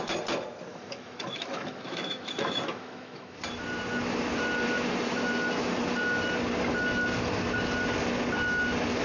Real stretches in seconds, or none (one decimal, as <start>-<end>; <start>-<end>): 0.0-0.7; 3.4-9.0